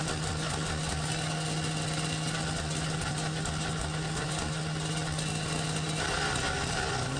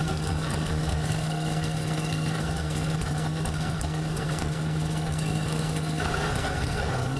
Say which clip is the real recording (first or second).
first